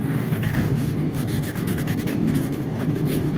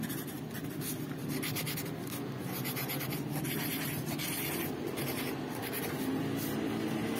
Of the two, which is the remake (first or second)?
first